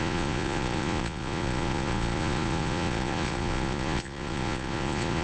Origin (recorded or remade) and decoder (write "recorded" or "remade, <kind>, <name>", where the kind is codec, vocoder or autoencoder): remade, vocoder, Vocos